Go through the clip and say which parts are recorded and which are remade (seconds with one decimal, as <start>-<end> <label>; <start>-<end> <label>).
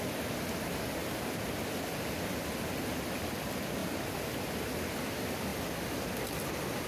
0.0-6.9 recorded